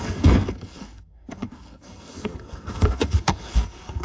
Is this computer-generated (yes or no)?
yes